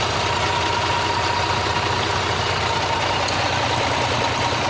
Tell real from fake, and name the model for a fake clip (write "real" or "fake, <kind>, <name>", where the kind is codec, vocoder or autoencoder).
real